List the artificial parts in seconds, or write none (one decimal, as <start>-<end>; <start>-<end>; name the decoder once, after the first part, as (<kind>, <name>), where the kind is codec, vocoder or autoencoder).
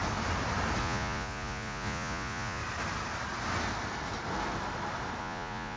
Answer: 0.8-2.6 (vocoder, Vocos); 5.2-5.8